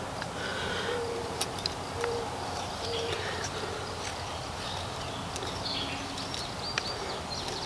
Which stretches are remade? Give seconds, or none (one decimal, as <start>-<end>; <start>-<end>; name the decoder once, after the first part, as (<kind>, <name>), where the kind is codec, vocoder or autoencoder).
0.5-3.5 (vocoder, BigVGAN v2)